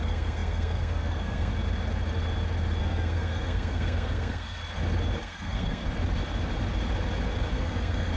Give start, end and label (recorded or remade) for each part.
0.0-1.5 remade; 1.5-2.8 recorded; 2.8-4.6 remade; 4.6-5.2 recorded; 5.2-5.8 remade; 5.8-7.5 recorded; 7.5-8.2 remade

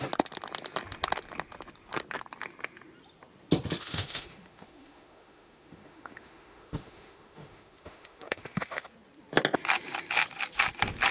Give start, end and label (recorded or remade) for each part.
0.0-3.8 recorded; 3.8-8.9 remade; 8.9-11.1 recorded

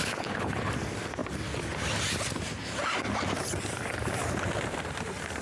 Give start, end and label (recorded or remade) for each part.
0.0-0.7 remade; 0.7-5.4 recorded

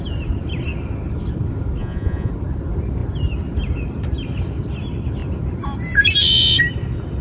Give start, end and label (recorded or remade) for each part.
0.0-1.8 recorded; 1.8-2.3 remade; 2.3-7.2 recorded